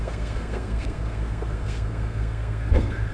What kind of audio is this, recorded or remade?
remade